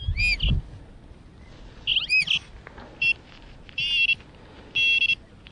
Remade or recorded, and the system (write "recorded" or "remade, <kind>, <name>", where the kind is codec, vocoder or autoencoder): recorded